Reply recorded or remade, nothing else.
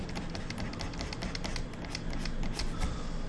recorded